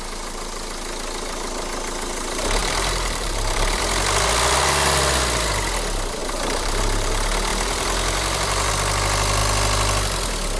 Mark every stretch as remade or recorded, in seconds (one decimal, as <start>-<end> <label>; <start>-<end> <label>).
0.0-2.6 recorded; 2.6-3.8 remade; 3.8-6.2 recorded; 6.2-7.1 remade; 7.1-7.5 recorded; 7.5-8.7 remade; 8.7-10.6 recorded